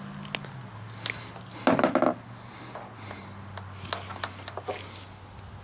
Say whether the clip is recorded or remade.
recorded